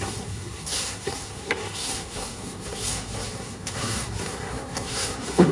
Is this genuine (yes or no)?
no